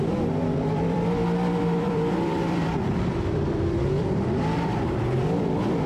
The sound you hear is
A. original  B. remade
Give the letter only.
B